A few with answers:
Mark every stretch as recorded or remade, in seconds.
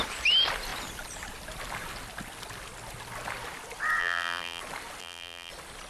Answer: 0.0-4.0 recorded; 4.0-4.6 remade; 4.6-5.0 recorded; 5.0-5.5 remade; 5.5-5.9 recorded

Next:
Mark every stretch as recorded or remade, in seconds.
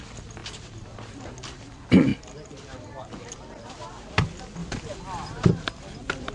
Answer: 0.0-6.3 recorded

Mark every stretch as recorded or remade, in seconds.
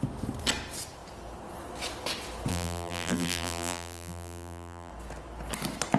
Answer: 0.0-2.5 recorded; 2.5-4.9 remade; 4.9-6.0 recorded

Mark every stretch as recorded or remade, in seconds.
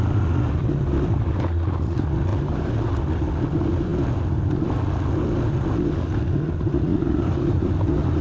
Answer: 0.0-2.3 recorded; 2.3-2.9 remade; 2.9-6.9 recorded; 6.9-7.7 remade; 7.7-8.2 recorded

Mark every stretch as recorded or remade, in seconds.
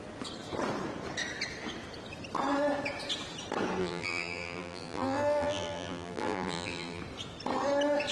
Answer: 0.0-3.8 recorded; 3.8-7.0 remade; 7.0-8.1 recorded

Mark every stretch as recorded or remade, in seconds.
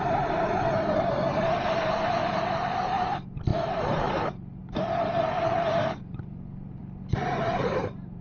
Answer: 0.0-4.6 remade; 4.6-5.8 recorded; 5.8-6.8 remade; 6.8-7.3 recorded; 7.3-8.2 remade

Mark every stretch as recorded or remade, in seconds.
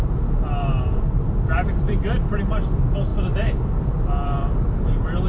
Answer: 0.0-3.1 remade; 3.1-3.7 recorded; 3.7-5.3 remade